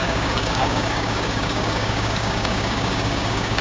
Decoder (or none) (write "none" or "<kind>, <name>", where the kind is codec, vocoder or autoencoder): codec, DAC